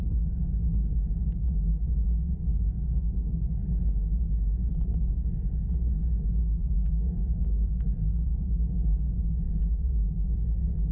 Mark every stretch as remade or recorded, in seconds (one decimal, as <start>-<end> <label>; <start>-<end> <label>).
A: 0.0-2.5 recorded; 2.5-3.3 remade; 3.3-6.4 recorded; 6.4-9.2 remade; 9.2-10.9 recorded